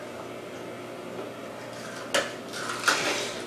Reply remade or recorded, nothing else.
recorded